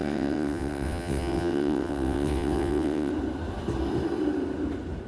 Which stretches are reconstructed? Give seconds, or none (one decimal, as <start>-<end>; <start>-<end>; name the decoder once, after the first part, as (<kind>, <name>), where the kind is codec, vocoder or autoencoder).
0.0-3.1 (vocoder, WaveNeXt)